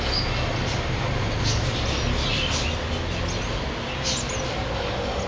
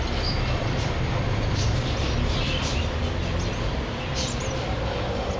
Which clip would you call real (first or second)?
first